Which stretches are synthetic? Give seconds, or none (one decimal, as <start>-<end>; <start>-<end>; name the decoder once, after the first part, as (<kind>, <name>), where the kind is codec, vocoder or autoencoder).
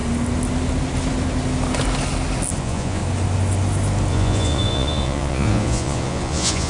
2.6-3.0 (vocoder, Vocos); 4.1-6.7